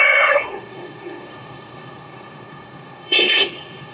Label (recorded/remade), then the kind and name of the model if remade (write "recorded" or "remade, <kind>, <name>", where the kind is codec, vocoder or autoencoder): remade, codec, SNAC